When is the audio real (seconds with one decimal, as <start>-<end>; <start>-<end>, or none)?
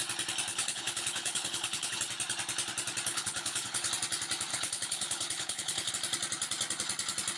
0.0-0.5; 2.0-3.1; 3.9-4.5; 5.9-7.4